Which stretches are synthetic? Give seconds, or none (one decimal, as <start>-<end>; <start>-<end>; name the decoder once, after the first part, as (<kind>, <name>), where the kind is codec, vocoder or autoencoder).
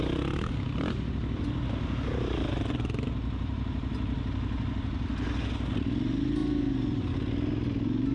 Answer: 6.4-7.0 (vocoder, BigVGAN v2)